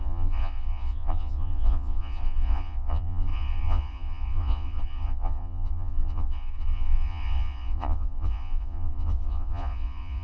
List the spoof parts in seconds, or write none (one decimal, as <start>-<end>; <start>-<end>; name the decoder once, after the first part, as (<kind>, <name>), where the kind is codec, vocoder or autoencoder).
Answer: 0.0-10.2 (vocoder, Vocos)